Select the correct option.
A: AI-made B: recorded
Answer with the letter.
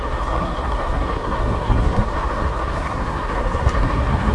A